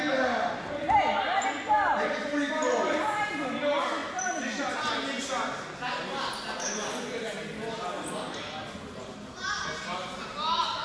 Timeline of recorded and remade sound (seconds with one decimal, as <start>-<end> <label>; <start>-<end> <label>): 0.0-10.8 recorded

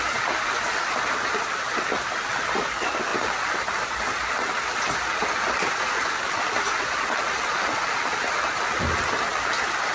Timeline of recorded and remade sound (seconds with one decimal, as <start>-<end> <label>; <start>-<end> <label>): 0.0-9.9 recorded

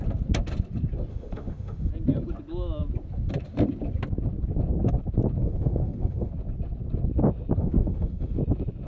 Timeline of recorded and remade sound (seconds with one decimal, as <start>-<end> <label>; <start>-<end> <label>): 0.0-1.1 recorded; 1.1-1.9 remade; 1.9-5.4 recorded; 5.4-6.3 remade; 6.3-7.6 recorded; 7.6-8.4 remade; 8.4-8.9 recorded

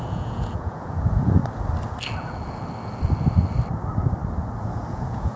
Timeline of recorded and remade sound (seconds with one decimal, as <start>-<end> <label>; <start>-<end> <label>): 0.0-1.4 remade; 1.4-4.6 recorded; 4.6-5.4 remade

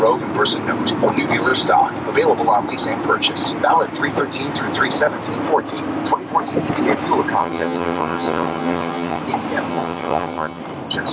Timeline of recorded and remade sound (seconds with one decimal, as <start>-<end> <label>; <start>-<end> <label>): 0.0-7.4 recorded; 7.4-9.2 remade; 9.2-9.7 recorded; 9.7-10.6 remade; 10.6-11.1 recorded

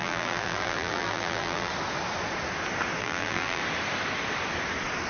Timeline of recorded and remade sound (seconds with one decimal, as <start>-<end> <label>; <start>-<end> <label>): 0.0-1.7 remade; 1.7-3.0 recorded; 3.0-3.6 remade; 3.6-5.1 recorded

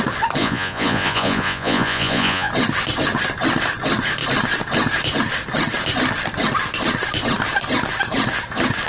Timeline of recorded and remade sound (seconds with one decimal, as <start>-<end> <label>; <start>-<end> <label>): 0.0-0.4 recorded; 0.4-2.5 remade; 2.5-8.9 recorded